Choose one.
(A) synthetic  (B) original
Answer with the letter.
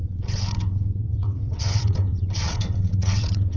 A